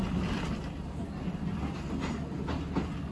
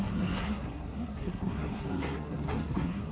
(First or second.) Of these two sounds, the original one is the first